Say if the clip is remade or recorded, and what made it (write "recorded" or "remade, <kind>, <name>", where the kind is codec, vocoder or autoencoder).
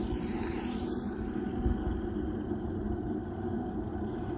recorded